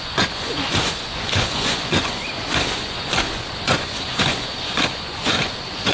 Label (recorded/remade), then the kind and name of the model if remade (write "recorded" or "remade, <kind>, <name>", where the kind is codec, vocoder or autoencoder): remade, vocoder, Vocos